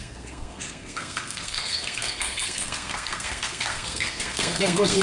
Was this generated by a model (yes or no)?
yes